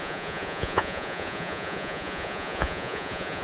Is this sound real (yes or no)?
no